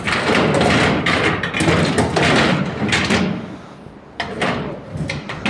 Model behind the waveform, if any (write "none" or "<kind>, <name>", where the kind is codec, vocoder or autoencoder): none